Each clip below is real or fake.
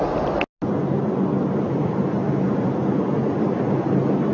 real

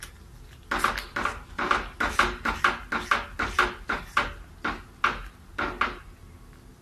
real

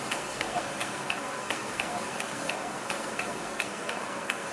fake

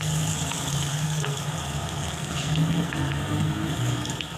fake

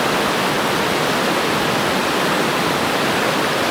real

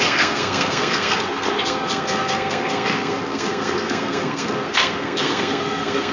fake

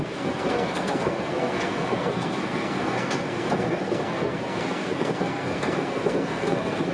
fake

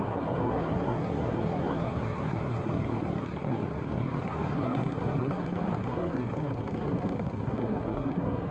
fake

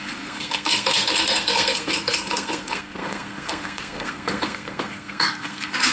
fake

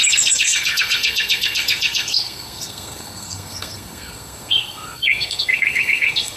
fake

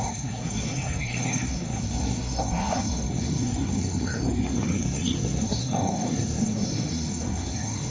fake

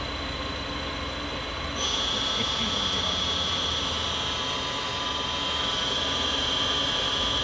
real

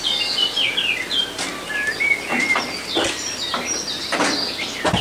real